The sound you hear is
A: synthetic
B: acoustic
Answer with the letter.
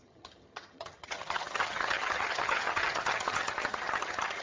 A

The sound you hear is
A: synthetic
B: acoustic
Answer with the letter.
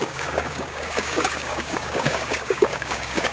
A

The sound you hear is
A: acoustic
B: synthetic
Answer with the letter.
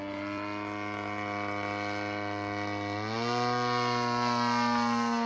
A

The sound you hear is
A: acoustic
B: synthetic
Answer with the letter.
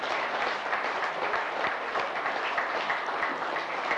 A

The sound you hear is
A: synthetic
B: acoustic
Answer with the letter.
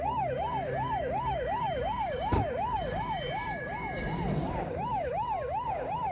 A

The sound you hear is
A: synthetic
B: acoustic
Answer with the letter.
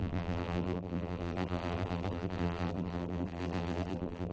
A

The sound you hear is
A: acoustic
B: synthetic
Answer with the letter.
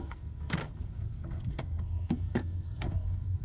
B